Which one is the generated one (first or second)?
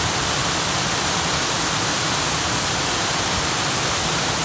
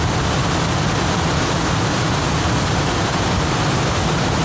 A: first